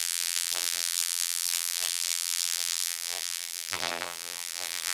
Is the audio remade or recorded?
remade